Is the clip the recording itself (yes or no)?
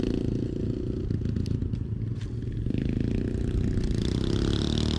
yes